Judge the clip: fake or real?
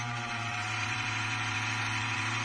fake